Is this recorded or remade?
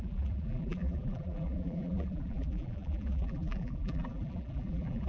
remade